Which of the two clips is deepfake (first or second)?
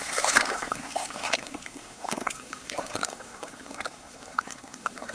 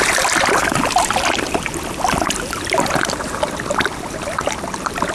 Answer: first